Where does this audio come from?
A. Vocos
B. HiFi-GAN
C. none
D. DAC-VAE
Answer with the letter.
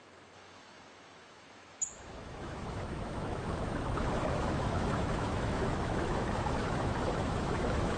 D